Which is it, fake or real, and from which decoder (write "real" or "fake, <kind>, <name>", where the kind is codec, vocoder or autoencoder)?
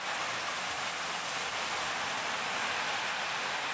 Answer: real